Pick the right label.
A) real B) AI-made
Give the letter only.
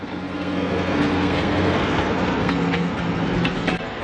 B